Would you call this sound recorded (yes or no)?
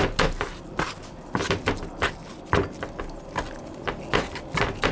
yes